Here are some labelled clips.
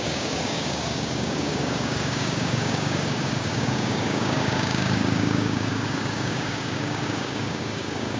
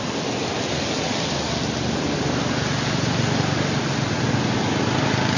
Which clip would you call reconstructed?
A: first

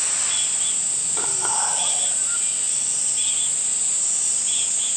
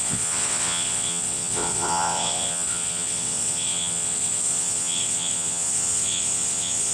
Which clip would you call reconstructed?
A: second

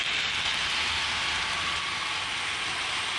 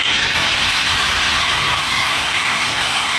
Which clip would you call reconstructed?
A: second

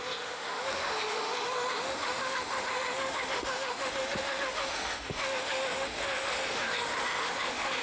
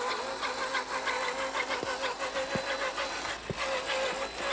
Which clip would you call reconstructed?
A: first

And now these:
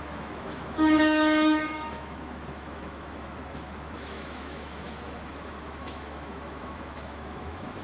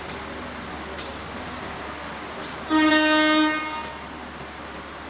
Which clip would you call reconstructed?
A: first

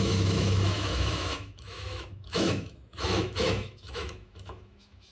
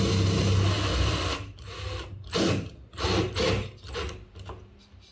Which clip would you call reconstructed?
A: first